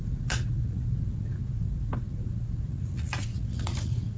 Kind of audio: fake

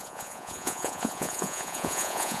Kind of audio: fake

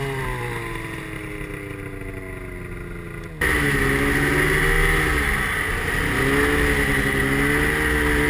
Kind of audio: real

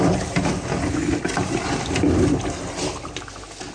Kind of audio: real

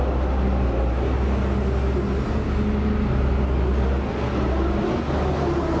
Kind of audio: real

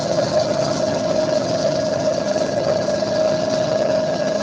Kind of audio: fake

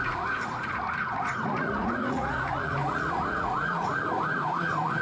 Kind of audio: fake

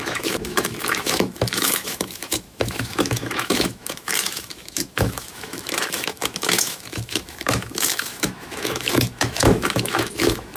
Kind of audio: fake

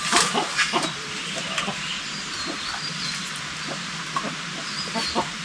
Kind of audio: real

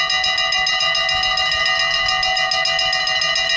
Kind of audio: real